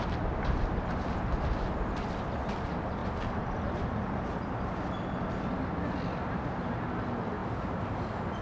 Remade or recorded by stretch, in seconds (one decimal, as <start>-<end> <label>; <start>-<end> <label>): 0.0-8.4 recorded